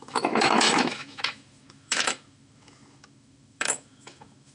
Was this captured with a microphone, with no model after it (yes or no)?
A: no